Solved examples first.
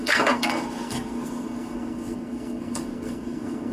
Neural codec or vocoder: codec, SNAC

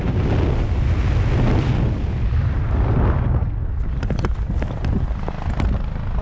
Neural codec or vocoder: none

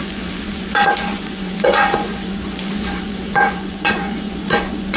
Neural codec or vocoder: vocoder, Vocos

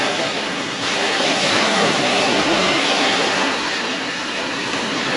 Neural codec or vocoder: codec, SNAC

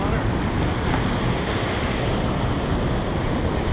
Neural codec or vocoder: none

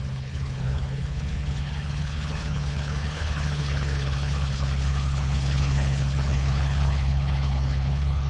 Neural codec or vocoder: codec, HILCodec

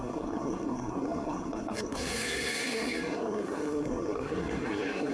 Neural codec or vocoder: codec, SNAC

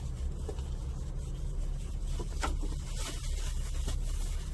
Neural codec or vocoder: none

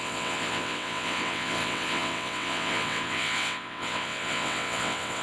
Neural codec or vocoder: vocoder, WaveNeXt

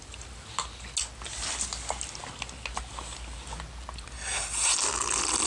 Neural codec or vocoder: none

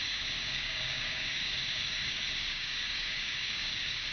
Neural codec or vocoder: codec, DAC